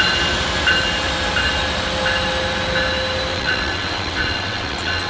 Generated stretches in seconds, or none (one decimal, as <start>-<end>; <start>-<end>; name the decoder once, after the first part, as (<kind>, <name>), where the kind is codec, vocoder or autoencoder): 3.3-5.1 (vocoder, WaveNeXt)